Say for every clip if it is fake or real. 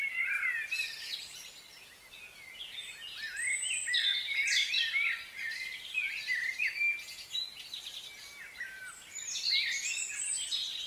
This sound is real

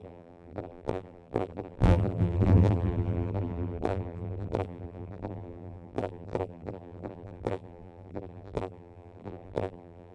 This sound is fake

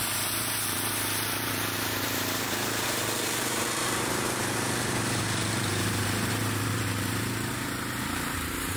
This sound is fake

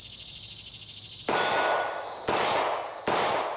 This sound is real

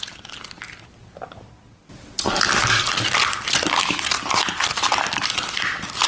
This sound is real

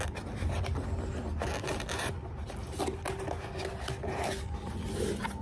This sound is real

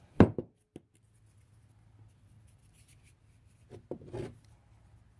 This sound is real